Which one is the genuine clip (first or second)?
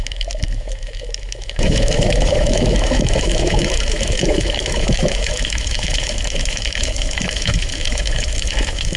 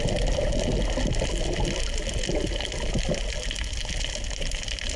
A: second